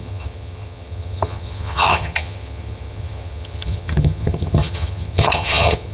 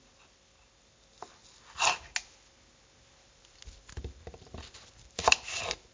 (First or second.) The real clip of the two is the second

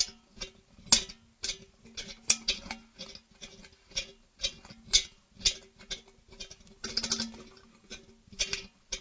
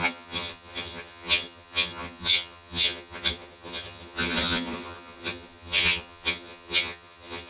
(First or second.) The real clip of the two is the first